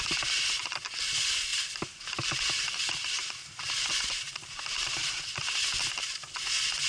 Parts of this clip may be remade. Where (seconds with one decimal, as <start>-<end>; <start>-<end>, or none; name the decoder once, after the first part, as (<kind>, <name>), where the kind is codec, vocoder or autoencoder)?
1.5-5.6 (vocoder, BigVGAN v2)